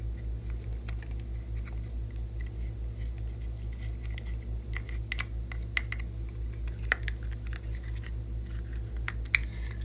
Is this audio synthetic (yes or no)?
no